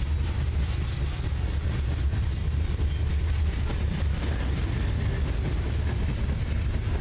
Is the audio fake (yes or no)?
no